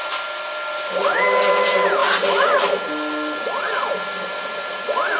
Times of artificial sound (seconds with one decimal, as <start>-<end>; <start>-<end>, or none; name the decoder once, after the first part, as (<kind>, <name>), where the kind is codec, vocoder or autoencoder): none